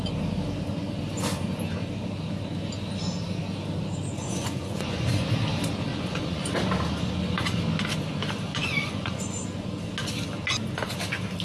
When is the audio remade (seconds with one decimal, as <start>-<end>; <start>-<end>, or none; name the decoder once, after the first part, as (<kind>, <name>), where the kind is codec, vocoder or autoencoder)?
4.1-5.2 (vocoder, Vocos); 5.9-6.5; 8.5-9.2